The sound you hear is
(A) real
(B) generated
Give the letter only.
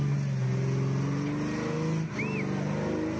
A